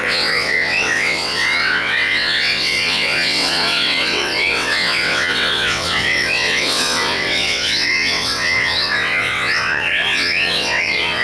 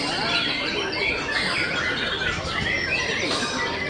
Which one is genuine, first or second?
second